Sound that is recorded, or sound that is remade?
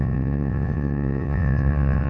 remade